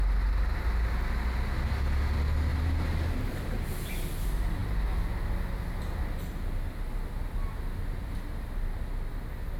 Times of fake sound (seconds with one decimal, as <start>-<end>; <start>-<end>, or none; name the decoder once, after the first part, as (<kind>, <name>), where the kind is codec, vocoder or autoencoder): 2.5-3.9 (vocoder, BigVGAN v2)

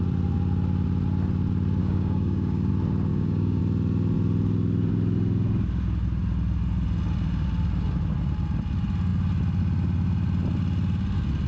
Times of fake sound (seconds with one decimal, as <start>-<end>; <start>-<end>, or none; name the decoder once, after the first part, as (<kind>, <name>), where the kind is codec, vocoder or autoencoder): 1.8-2.7 (codec, DAC); 3.1-3.6

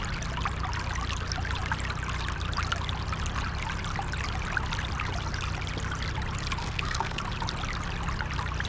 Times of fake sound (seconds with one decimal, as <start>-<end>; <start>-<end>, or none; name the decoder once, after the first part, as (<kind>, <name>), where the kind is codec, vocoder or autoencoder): 6.6-7.2 (codec, SNAC)

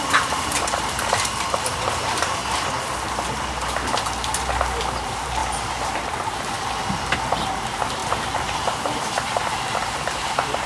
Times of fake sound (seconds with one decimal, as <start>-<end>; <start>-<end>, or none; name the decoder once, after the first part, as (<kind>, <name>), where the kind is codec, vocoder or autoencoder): 0.0-2.4 (vocoder, BigVGAN v2); 4.6-10.7

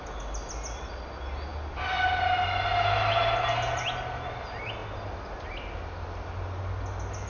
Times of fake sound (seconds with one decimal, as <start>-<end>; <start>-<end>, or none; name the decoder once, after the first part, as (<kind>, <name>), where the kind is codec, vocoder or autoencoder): none

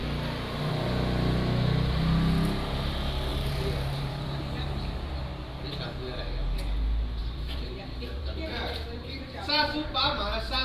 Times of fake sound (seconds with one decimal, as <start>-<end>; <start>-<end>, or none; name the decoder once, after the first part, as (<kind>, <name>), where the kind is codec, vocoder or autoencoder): 3.3-5.3 (vocoder, BigVGAN v2); 7.2-10.0

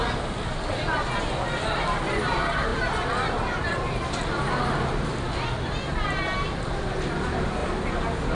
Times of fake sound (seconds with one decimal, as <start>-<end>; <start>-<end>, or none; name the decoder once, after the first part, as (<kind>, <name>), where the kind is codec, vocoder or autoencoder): none

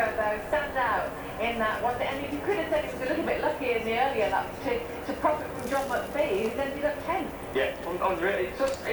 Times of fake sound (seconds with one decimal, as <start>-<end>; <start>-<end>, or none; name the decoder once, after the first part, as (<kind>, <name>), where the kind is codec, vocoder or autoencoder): none